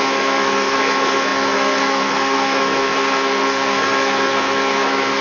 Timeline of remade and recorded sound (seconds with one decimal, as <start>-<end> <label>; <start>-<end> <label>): 0.0-5.2 remade